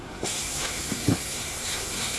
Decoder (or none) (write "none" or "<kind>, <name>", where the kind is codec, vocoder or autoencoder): codec, SNAC